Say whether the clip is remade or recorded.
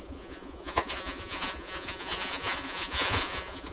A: remade